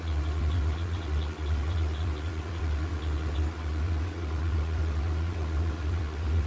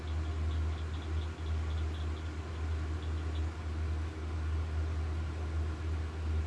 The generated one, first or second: first